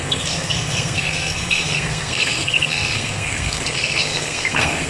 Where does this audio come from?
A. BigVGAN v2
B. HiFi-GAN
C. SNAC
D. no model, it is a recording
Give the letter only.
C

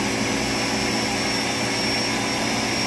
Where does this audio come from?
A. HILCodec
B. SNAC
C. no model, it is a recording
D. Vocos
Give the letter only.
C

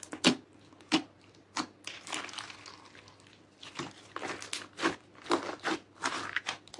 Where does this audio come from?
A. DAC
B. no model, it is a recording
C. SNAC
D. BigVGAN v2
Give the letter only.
B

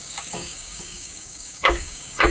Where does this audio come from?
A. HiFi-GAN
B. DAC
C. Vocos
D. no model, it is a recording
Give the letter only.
B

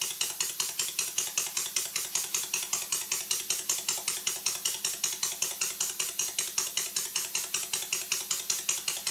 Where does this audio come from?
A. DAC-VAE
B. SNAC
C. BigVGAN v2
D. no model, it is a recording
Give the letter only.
D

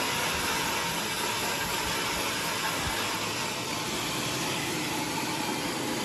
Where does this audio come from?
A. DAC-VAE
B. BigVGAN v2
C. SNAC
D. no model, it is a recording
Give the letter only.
D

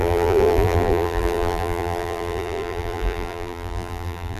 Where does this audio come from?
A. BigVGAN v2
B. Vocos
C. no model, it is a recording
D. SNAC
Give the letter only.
A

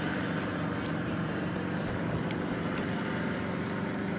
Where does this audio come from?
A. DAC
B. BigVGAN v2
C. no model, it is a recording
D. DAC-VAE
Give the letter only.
B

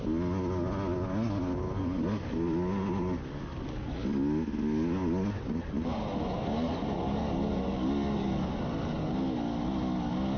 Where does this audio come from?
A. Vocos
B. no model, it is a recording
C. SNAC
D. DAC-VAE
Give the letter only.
B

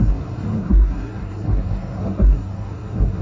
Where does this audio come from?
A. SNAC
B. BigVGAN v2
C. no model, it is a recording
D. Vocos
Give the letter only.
A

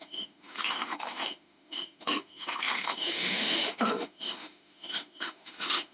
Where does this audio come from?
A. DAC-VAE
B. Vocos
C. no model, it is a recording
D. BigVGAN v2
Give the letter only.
A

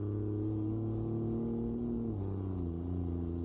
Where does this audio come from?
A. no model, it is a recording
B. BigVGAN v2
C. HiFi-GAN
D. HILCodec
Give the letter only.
A